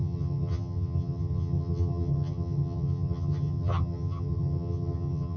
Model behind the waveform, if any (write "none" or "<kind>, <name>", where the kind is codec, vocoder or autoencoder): vocoder, HiFi-GAN